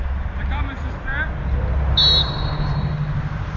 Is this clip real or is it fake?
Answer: real